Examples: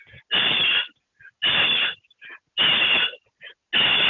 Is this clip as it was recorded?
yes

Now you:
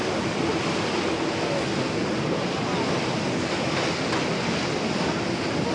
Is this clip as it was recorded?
yes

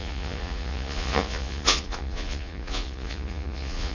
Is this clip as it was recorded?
no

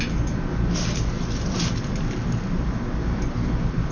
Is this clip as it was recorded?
yes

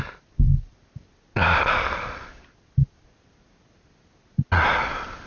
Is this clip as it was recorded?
yes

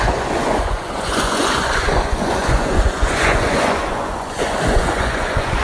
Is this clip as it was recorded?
no